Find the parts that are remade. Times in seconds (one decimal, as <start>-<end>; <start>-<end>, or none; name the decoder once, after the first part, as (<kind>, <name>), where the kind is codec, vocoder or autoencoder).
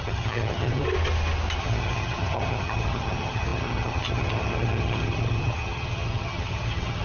0.0-0.8 (vocoder, HiFi-GAN); 1.6-7.0